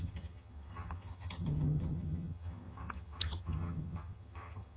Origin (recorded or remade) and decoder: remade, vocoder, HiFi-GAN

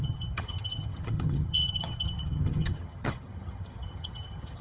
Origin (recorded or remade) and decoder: remade, vocoder, HiFi-GAN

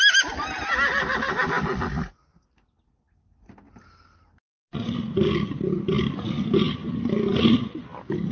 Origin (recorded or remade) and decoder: recorded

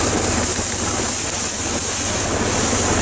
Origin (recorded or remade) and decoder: recorded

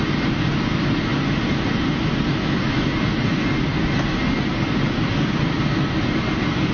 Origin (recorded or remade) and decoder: recorded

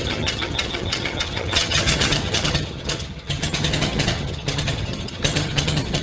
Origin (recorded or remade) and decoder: remade, vocoder, HiFi-GAN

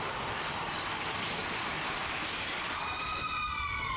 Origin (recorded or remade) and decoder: recorded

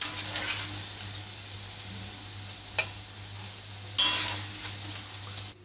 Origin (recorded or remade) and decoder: recorded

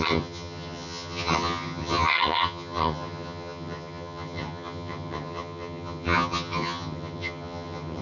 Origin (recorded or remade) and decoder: remade, vocoder, HiFi-GAN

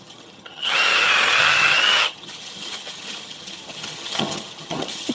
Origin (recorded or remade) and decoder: remade, vocoder, HiFi-GAN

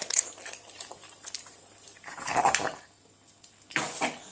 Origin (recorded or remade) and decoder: recorded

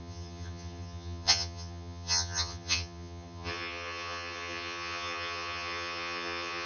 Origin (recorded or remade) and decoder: remade, vocoder, HiFi-GAN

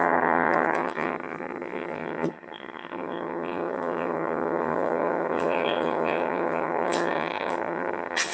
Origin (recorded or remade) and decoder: remade, vocoder, HiFi-GAN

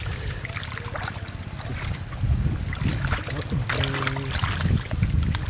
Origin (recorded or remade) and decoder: recorded